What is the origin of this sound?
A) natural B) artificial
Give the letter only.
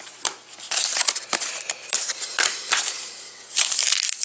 B